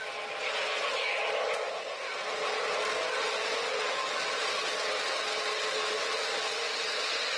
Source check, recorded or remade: recorded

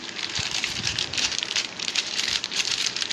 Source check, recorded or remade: remade